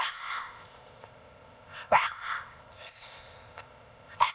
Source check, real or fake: fake